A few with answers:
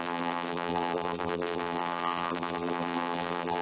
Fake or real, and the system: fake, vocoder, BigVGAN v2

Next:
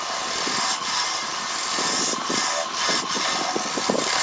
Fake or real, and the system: real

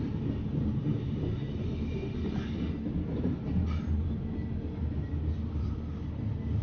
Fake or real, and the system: real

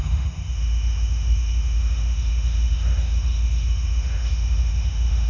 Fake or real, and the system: fake, autoencoder, DAC-VAE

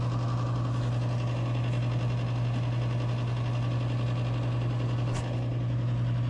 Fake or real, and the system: real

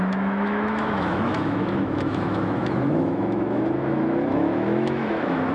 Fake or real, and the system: fake, autoencoder, DAC-VAE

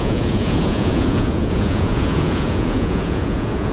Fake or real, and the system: fake, vocoder, Vocos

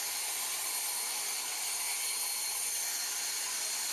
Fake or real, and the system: real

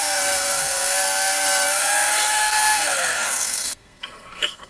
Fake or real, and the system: fake, codec, SNAC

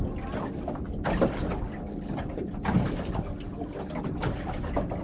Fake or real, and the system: real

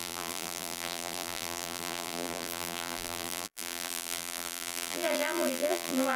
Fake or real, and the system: fake, vocoder, BigVGAN v2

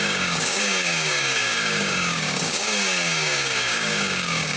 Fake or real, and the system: fake, codec, DAC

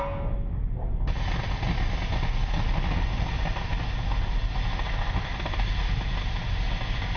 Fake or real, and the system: real